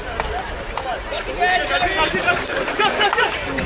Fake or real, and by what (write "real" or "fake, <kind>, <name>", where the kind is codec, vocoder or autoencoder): real